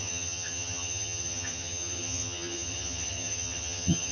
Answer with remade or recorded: remade